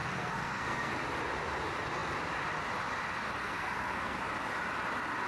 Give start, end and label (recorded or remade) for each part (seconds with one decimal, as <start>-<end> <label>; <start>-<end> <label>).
0.0-1.0 remade; 1.0-3.4 recorded; 3.4-4.2 remade; 4.2-5.3 recorded